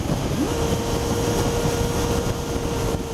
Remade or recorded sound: recorded